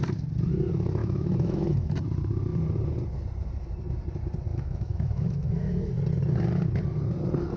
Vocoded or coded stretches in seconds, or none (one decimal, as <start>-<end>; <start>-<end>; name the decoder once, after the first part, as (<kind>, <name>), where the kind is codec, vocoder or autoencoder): 1.0-1.9 (autoencoder, DAC-VAE); 4.5-5.9